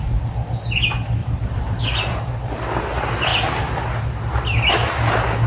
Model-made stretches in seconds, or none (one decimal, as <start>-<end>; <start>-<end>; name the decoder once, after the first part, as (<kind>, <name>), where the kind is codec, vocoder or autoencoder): 1.2-1.8 (vocoder, BigVGAN v2)